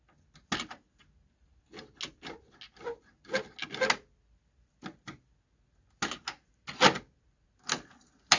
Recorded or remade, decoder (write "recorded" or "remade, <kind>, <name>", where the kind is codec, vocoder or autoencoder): recorded